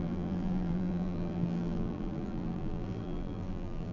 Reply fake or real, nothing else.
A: fake